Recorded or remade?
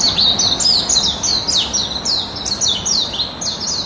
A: recorded